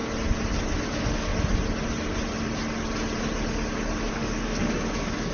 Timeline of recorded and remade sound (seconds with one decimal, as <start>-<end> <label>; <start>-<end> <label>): 0.0-0.9 recorded; 0.9-1.3 remade; 1.3-4.1 recorded; 4.1-5.3 remade